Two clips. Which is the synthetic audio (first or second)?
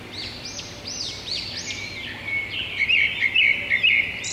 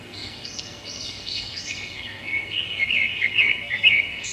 second